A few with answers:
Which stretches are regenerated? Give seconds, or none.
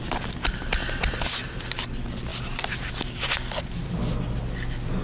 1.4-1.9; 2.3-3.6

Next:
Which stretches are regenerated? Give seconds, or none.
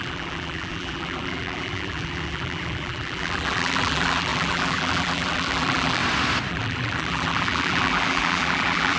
0.0-6.0; 6.5-9.0